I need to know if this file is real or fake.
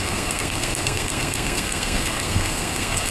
fake